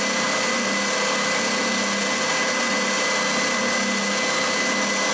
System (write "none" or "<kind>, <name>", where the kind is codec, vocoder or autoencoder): none